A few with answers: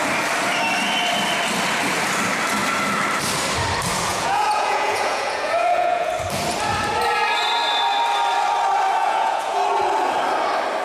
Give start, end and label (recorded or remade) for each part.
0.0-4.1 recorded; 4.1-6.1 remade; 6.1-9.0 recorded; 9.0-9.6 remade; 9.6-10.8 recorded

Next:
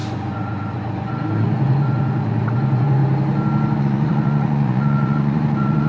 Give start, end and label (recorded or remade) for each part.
0.0-3.0 remade; 3.0-3.8 recorded; 3.8-5.9 remade

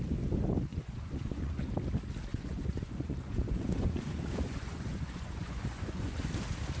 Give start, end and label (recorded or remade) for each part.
0.0-0.7 recorded; 0.7-1.7 remade; 1.7-2.3 recorded; 2.3-6.3 remade; 6.3-6.8 recorded

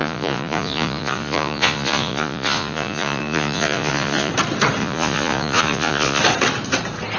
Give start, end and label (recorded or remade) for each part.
0.0-4.3 remade; 4.3-4.8 recorded; 4.8-6.2 remade; 6.2-7.2 recorded

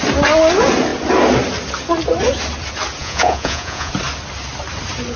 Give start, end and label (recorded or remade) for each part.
0.0-3.0 recorded; 3.0-3.9 remade; 3.9-5.2 recorded

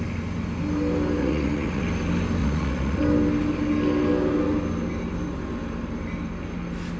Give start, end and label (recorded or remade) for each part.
0.0-1.2 recorded; 1.2-1.8 remade; 1.8-2.4 recorded; 2.4-3.0 remade; 3.0-7.0 recorded

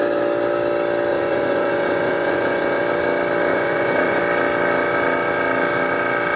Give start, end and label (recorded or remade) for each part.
0.0-1.1 recorded; 1.1-2.8 remade; 2.8-3.5 recorded; 3.5-4.2 remade; 4.2-6.4 recorded

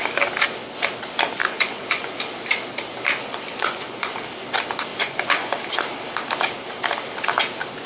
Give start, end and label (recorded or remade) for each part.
0.0-1.4 recorded; 1.4-2.1 remade; 2.1-3.5 recorded; 3.5-4.1 remade; 4.1-4.9 recorded; 4.9-5.6 remade; 5.6-7.9 recorded